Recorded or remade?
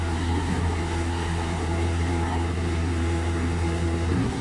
remade